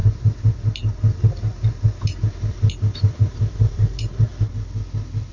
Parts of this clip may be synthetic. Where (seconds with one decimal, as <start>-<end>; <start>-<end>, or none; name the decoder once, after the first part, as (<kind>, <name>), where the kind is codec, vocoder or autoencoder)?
0.0-4.3 (vocoder, BigVGAN v2)